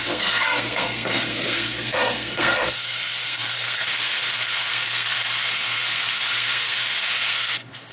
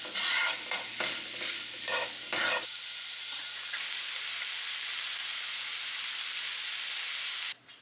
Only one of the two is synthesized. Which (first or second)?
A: first